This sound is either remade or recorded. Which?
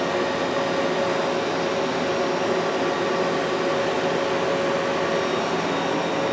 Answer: recorded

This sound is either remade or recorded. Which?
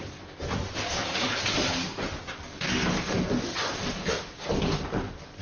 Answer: recorded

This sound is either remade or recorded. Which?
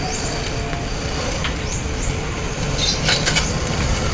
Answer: recorded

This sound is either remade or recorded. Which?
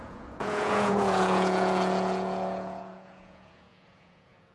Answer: remade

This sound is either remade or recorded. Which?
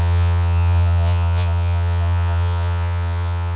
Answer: remade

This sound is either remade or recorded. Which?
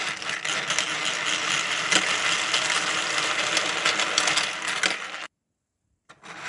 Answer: recorded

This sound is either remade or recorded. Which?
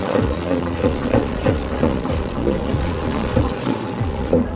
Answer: remade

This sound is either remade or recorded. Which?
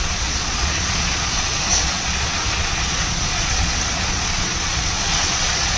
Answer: remade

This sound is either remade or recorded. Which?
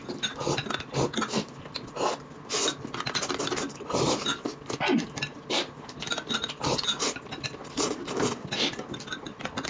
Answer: recorded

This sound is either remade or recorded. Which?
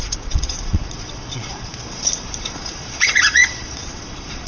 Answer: remade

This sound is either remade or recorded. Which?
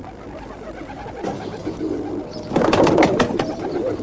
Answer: recorded